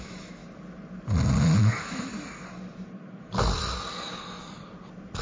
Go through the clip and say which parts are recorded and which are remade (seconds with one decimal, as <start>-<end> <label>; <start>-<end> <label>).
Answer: 0.0-0.4 remade; 0.4-1.6 recorded; 1.6-2.1 remade; 2.1-5.2 recorded